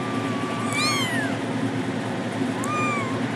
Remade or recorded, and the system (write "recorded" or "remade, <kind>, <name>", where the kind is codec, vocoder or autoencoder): recorded